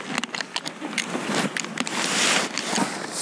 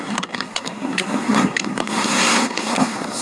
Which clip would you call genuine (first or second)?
first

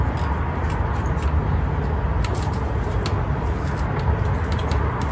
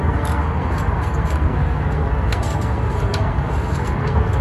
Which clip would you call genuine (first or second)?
first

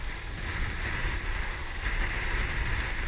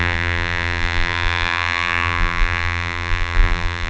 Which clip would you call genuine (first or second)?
first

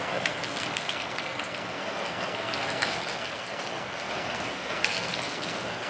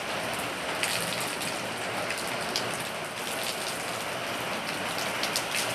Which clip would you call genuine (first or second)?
second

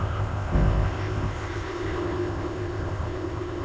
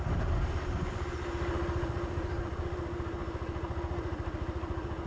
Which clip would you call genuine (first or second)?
second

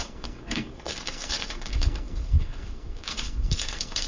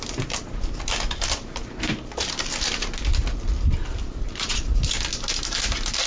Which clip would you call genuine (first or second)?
second